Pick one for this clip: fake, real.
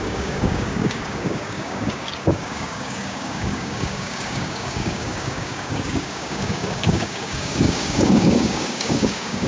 fake